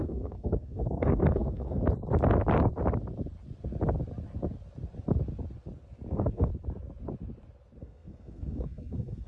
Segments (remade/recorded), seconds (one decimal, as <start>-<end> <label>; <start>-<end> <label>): 0.0-1.8 remade; 1.8-6.1 recorded; 6.1-6.5 remade; 6.5-7.8 recorded; 7.8-9.3 remade